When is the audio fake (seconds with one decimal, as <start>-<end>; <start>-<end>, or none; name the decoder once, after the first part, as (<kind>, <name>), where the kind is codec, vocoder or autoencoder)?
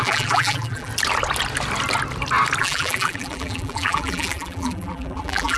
0.0-0.9 (vocoder, BigVGAN v2); 2.6-5.6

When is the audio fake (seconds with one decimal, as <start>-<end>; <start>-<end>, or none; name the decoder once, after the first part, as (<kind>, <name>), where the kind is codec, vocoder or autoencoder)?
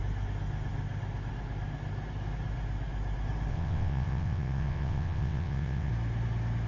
3.5-5.9 (vocoder, WaveNeXt)